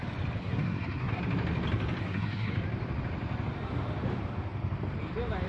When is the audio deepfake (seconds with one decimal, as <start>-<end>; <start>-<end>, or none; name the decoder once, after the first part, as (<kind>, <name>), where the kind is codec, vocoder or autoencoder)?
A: 0.4-1.2 (codec, SNAC); 2.0-2.5